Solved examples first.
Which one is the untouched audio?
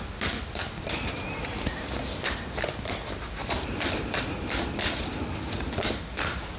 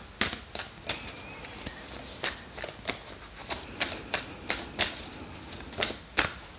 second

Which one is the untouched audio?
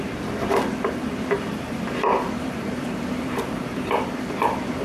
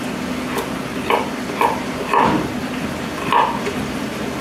second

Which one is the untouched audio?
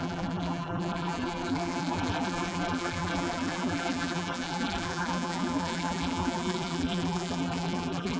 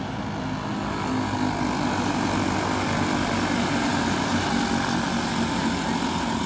second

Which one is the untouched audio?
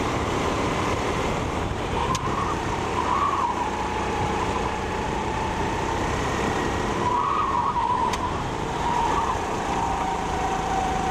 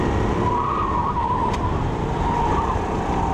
second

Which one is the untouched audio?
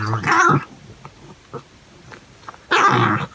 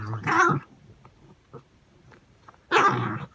first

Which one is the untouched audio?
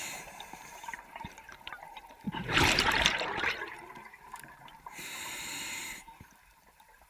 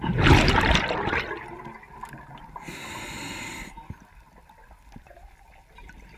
second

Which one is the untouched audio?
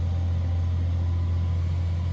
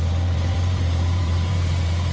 first